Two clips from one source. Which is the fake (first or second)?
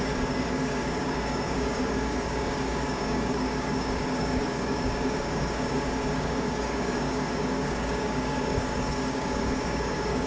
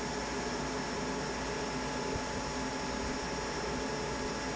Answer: first